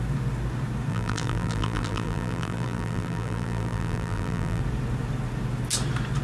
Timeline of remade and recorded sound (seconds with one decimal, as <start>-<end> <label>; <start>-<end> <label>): 0.0-0.9 recorded; 0.9-4.6 remade; 4.6-6.2 recorded

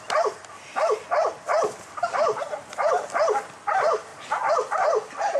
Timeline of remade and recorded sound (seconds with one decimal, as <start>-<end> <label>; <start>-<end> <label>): 0.0-0.4 recorded; 0.4-3.6 remade; 3.6-4.1 recorded; 4.1-5.4 remade

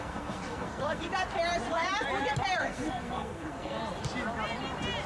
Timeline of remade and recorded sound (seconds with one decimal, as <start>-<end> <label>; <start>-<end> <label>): 0.0-1.1 remade; 1.1-2.6 recorded; 2.6-3.8 remade; 3.8-5.1 recorded

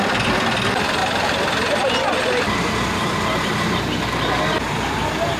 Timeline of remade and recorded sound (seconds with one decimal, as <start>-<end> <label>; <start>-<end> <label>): 0.0-5.4 recorded

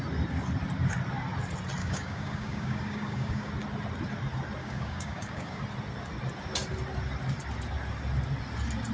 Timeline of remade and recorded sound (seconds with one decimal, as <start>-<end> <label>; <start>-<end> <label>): 0.0-1.8 recorded; 1.8-3.5 remade; 3.5-4.6 recorded; 4.6-5.6 remade; 5.6-8.9 recorded

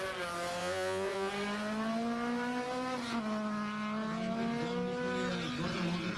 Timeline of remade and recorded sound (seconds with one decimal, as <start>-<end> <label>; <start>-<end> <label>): 0.0-0.6 recorded; 0.6-1.3 remade; 1.3-6.2 recorded

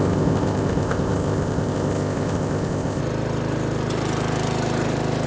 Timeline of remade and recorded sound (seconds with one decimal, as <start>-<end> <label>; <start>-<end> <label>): 0.0-3.0 remade; 3.0-5.3 recorded